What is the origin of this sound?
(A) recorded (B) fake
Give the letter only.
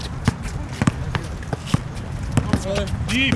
A